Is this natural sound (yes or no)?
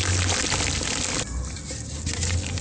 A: yes